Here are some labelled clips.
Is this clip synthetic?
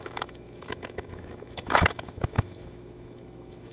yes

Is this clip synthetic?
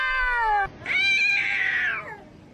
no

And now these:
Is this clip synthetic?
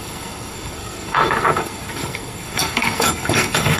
yes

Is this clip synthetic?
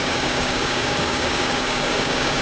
yes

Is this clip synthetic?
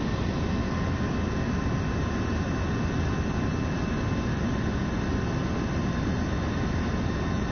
no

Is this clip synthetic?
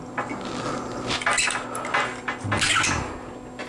no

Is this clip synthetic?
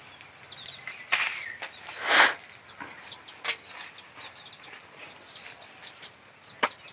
no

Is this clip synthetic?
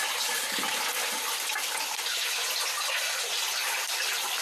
yes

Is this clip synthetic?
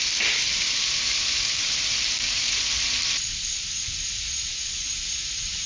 yes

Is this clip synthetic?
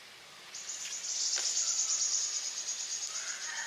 yes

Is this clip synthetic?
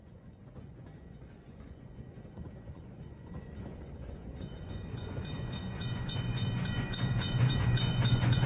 yes